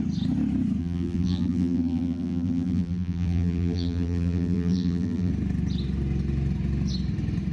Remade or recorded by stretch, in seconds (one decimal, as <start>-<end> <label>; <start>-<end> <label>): 0.0-0.8 recorded; 0.8-5.3 remade; 5.3-7.5 recorded